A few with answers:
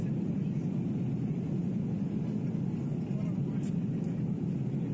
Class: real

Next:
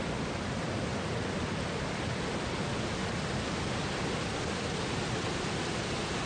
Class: real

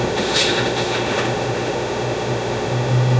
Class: fake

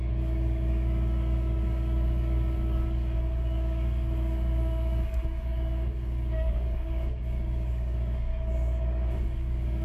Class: fake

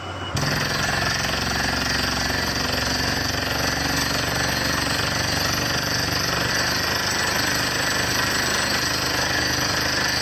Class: real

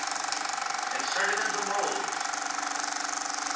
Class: real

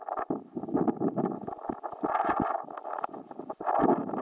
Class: real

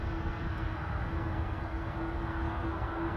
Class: fake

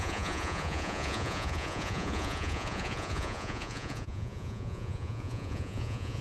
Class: fake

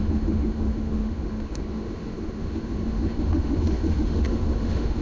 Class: fake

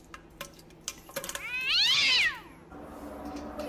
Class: real